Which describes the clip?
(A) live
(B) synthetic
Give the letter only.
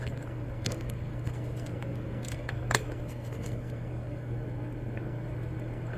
B